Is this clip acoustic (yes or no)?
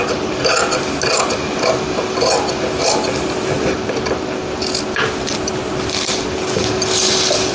yes